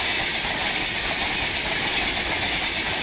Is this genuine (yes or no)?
yes